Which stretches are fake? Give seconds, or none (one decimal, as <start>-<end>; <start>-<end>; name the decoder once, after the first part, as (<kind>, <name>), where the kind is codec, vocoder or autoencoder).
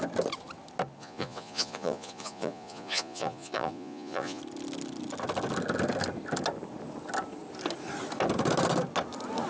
1.0-4.4 (vocoder, Vocos)